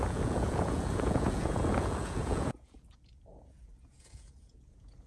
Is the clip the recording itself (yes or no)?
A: no